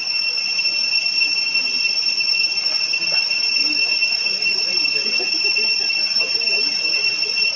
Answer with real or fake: real